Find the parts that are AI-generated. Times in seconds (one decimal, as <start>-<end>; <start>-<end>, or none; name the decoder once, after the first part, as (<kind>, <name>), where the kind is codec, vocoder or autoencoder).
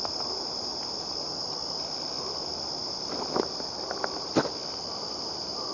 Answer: none